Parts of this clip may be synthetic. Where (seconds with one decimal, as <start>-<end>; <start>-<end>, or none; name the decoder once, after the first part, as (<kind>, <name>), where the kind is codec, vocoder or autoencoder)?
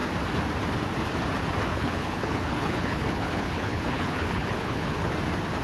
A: 1.7-5.1 (codec, HILCodec)